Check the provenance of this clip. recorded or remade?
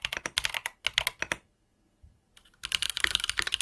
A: recorded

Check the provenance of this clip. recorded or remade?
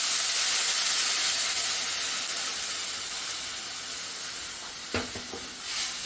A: recorded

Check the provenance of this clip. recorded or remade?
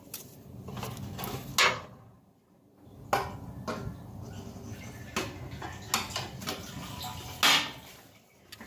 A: recorded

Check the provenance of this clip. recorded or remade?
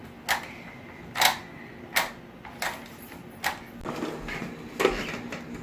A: recorded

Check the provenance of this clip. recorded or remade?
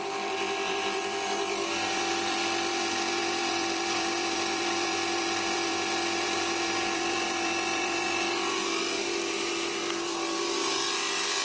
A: remade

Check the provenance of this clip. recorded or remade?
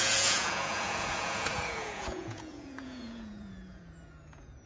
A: remade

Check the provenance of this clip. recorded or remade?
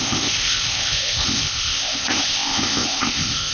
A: remade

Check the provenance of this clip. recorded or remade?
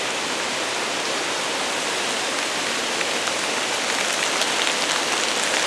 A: recorded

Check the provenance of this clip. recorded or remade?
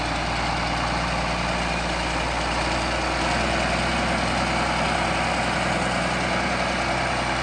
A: recorded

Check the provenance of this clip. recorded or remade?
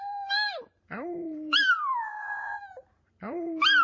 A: remade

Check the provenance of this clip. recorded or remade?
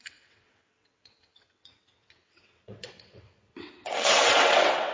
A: remade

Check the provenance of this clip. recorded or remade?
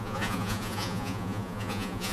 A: remade